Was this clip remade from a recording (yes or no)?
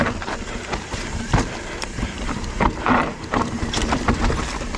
yes